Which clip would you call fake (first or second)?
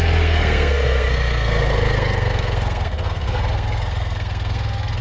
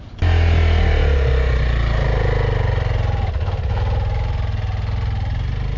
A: first